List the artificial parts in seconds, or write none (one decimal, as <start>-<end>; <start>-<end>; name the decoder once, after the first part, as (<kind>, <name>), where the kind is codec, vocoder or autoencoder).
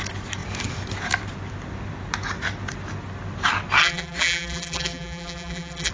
3.8-5.9 (vocoder, BigVGAN v2)